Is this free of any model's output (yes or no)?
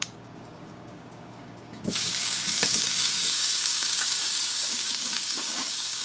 no